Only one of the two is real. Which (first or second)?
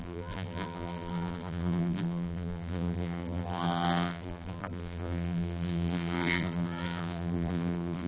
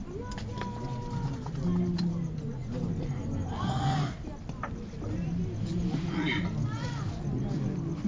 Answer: second